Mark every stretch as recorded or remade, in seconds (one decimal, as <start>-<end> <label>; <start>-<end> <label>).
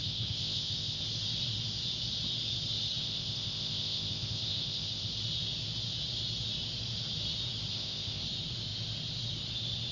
0.0-1.0 remade; 1.0-3.0 recorded; 3.0-5.1 remade; 5.1-7.7 recorded; 7.7-8.2 remade; 8.2-9.9 recorded